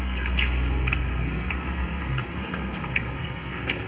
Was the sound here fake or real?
fake